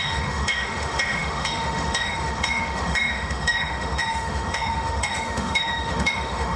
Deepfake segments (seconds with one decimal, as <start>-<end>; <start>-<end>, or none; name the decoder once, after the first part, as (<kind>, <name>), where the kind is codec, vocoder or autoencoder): 0.0-6.6 (autoencoder, DAC-VAE)